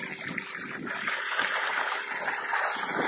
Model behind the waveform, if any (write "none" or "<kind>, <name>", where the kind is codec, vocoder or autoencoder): none